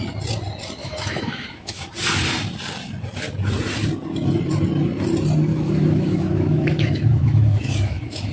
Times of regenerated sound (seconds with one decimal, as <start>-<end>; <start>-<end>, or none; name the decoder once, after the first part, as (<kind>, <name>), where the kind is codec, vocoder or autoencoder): 0.8-1.9 (autoencoder, DAC-VAE); 5.5-8.3